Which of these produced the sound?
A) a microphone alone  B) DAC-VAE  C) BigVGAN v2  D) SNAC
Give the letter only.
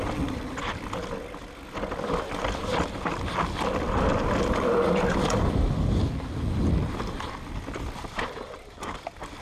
A